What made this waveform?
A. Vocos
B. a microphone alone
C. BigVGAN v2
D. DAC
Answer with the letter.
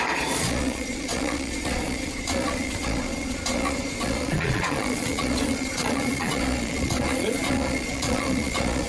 A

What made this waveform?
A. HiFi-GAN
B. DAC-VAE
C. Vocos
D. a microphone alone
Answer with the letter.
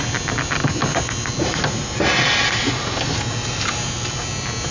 D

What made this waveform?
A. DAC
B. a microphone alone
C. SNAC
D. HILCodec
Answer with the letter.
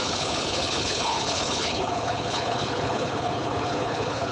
D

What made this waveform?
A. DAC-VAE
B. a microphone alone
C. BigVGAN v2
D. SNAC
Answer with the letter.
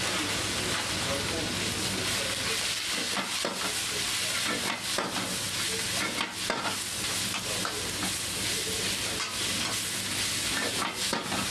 B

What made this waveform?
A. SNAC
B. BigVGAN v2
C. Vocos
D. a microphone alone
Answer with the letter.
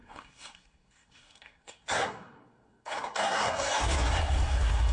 A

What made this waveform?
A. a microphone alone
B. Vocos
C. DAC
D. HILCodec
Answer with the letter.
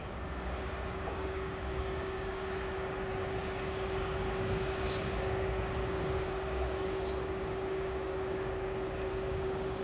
C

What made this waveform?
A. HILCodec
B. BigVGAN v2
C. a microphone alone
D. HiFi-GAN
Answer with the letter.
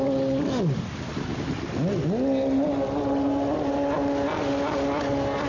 C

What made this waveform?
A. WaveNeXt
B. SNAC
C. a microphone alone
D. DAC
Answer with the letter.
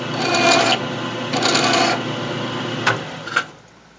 C